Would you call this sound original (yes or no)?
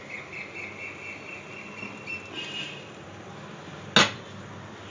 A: yes